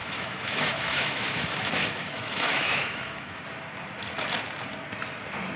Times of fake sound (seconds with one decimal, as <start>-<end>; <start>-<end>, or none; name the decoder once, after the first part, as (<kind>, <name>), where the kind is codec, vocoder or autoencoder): 0.0-3.4 (autoencoder, DAC-VAE)